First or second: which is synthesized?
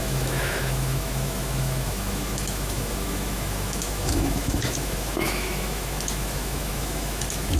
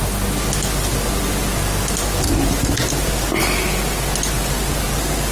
first